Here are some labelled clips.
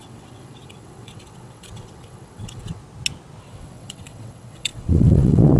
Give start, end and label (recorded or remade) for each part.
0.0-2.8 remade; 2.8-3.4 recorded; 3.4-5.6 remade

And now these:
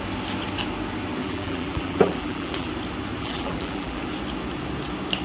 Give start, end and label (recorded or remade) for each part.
0.0-1.2 recorded; 1.2-2.7 remade; 2.7-3.2 recorded; 3.2-4.0 remade; 4.0-5.2 recorded